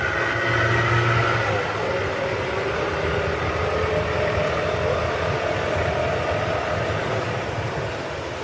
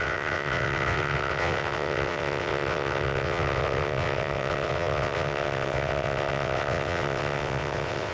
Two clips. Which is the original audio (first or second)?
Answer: first